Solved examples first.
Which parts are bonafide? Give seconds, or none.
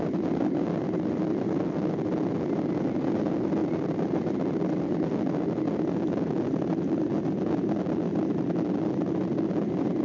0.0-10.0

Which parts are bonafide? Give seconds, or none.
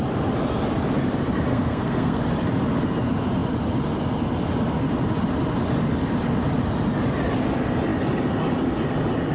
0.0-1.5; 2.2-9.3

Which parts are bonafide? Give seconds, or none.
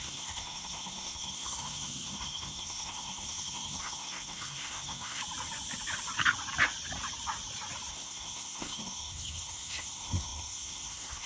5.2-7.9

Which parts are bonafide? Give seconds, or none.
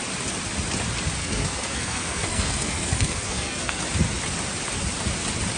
0.0-1.2; 3.8-5.6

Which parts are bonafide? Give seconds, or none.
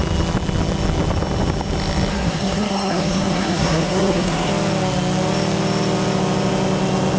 0.0-2.1; 4.5-7.2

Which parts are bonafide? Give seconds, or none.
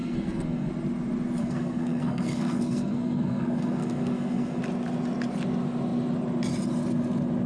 0.7-1.4; 4.6-7.5